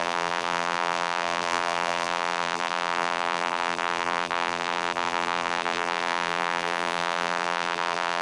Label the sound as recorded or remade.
remade